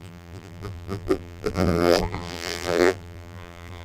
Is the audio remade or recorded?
remade